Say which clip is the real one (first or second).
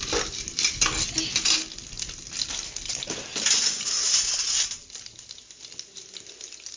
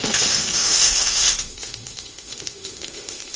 first